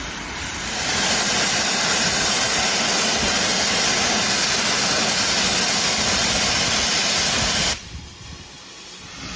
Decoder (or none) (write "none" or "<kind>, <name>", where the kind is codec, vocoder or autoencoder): none